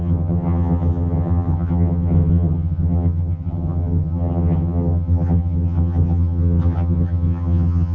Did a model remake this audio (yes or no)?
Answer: yes